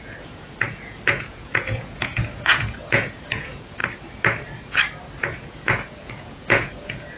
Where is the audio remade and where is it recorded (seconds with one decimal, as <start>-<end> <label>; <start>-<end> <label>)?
0.0-3.8 remade; 3.8-5.2 recorded; 5.2-7.2 remade